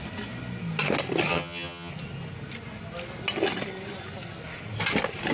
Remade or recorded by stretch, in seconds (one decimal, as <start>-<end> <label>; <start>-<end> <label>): 0.0-1.3 recorded; 1.3-1.9 remade; 1.9-5.3 recorded